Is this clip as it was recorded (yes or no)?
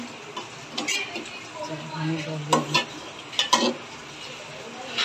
yes